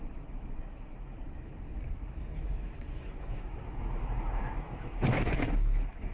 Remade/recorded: remade